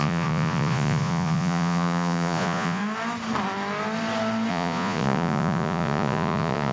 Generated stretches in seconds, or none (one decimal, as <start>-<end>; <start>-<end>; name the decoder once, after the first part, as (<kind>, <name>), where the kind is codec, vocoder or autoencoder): 0.0-2.8 (vocoder, Vocos); 4.5-6.7